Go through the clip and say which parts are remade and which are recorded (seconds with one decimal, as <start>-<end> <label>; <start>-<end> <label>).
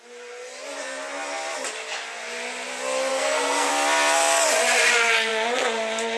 0.0-3.1 recorded; 3.1-3.7 remade; 3.7-6.2 recorded